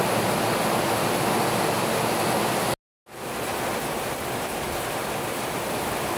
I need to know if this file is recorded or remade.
recorded